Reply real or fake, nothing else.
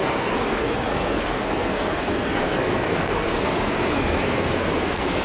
fake